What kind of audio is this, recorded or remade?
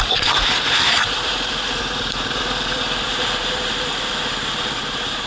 remade